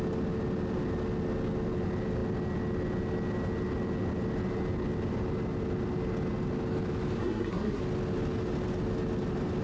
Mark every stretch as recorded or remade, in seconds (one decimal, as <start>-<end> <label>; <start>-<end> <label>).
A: 0.0-7.2 recorded; 7.2-7.8 remade; 7.8-9.6 recorded